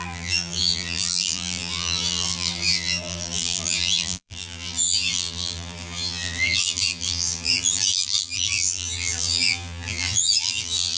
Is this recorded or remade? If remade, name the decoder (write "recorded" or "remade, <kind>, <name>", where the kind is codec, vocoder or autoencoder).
remade, vocoder, BigVGAN v2